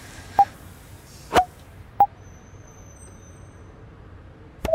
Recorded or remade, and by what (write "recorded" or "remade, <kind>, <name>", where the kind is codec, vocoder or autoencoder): remade, vocoder, BigVGAN v2